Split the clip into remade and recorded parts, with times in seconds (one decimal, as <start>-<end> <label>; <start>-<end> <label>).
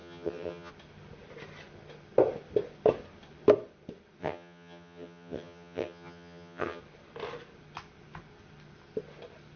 0.0-0.7 remade; 0.7-4.2 recorded; 4.2-6.8 remade; 6.8-9.6 recorded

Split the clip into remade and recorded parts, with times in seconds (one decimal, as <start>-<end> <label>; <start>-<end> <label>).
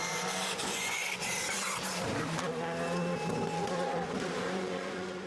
0.0-0.6 recorded; 0.6-1.0 remade; 1.0-3.6 recorded; 3.6-5.3 remade